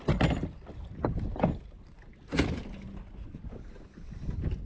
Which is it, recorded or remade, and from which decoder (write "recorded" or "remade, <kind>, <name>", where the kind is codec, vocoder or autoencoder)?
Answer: recorded